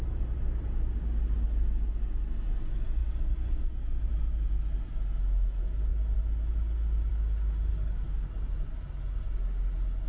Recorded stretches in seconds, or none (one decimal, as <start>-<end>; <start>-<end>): 0.0-7.7; 8.3-10.1